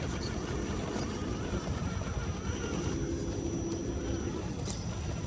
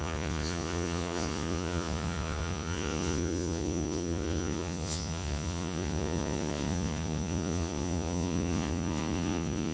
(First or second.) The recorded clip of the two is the first